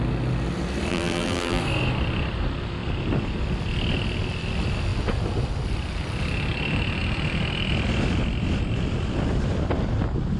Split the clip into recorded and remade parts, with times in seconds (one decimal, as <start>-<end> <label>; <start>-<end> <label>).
0.0-0.9 recorded; 0.9-1.6 remade; 1.6-10.4 recorded